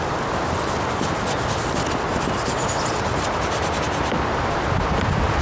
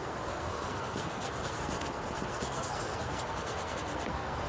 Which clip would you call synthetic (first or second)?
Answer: second